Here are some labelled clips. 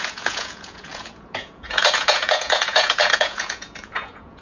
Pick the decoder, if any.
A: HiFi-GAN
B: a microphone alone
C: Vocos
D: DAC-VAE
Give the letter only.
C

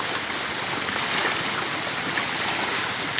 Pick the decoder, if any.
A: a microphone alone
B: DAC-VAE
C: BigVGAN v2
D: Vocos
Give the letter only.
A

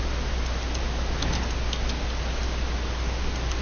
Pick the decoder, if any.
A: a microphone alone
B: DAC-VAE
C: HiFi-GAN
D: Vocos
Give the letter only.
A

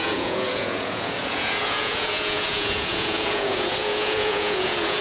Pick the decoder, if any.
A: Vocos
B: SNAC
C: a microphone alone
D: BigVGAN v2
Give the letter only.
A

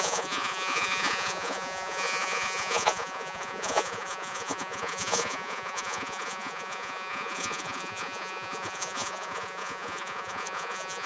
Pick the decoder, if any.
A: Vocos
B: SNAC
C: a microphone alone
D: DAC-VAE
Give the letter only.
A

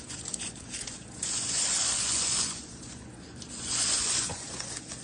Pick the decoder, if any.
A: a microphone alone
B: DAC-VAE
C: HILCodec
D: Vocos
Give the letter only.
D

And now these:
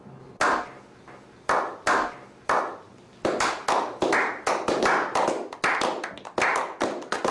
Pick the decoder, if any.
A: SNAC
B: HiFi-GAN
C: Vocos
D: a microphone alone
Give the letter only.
D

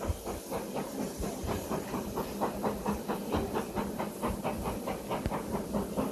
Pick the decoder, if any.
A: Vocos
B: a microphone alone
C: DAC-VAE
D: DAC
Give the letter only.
B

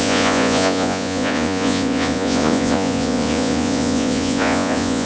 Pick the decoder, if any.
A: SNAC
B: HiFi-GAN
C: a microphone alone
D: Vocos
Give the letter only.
D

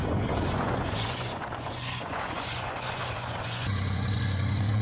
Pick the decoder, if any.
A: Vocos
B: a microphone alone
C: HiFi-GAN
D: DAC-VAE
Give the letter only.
A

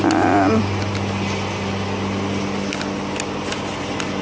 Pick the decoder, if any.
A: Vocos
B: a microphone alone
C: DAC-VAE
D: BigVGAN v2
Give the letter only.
B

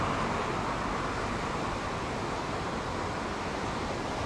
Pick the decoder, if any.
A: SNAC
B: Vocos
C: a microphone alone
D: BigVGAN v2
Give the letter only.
C